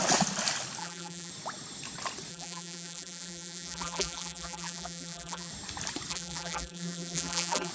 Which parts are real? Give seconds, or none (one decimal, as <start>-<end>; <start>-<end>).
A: 0.0-0.8; 1.3-2.3; 5.5-6.1